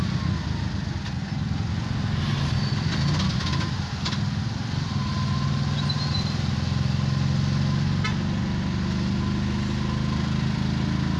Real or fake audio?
real